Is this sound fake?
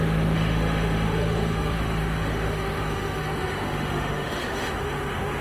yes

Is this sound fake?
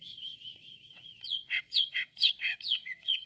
yes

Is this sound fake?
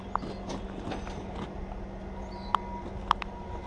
no